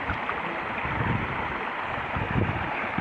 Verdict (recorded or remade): recorded